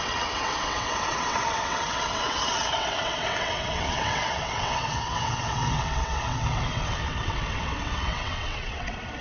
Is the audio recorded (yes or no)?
no